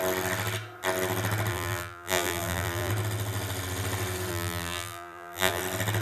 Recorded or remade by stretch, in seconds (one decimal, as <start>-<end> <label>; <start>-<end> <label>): 0.0-1.5 recorded; 1.5-2.9 remade; 2.9-4.3 recorded; 4.3-5.6 remade; 5.6-6.0 recorded